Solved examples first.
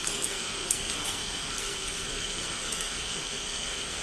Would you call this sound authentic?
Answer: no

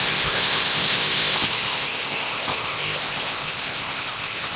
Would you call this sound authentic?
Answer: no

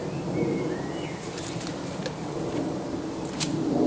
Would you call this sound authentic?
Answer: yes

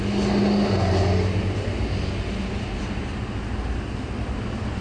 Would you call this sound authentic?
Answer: yes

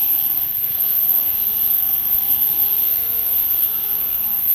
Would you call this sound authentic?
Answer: no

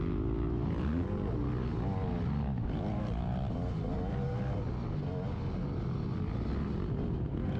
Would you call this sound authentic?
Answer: yes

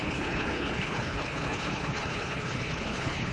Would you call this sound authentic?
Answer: no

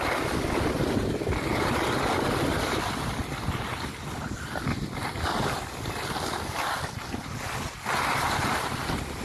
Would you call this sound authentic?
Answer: yes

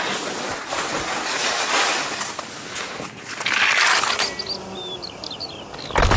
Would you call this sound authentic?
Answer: yes